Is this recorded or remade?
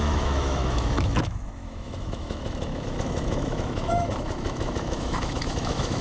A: remade